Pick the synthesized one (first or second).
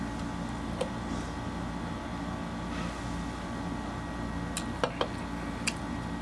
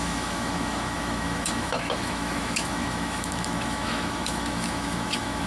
second